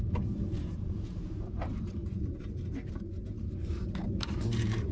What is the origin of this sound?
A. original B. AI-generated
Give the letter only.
B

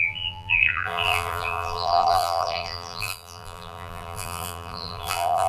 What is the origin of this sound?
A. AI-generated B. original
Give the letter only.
A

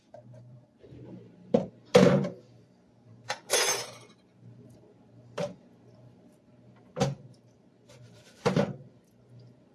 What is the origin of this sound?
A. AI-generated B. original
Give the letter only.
A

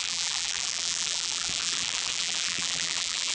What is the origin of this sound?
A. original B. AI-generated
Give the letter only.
B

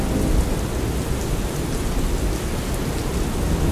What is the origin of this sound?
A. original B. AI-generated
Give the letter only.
A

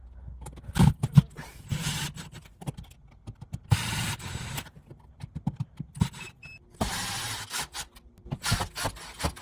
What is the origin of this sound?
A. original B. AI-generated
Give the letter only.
A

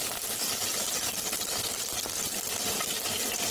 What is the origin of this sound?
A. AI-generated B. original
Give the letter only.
B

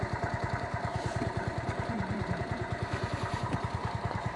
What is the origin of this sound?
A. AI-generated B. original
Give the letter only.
A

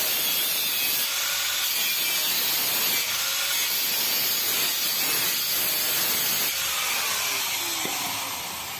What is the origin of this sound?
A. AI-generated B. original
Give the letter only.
B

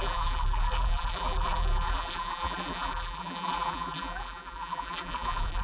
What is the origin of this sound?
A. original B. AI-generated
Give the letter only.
B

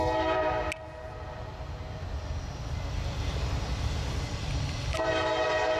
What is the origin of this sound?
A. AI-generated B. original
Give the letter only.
B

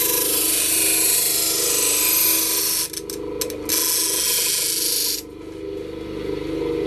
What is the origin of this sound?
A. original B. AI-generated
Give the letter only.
A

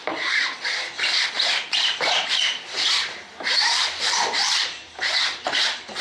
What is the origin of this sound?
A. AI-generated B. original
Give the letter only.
A